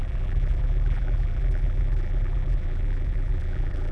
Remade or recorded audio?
remade